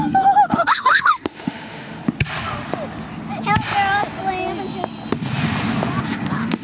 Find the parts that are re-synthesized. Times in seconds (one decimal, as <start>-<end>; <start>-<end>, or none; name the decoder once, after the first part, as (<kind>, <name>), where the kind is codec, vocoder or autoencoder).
0.0-2.0 (autoencoder, DAC-VAE); 6.0-6.6